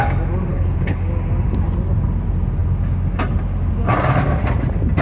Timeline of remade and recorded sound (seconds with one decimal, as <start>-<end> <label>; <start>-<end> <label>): 0.0-0.5 recorded; 0.5-1.1 remade; 1.1-5.0 recorded